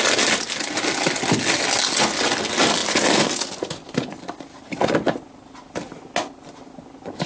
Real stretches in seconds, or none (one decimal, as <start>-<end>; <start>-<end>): 0.0-7.3